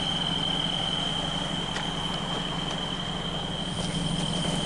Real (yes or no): yes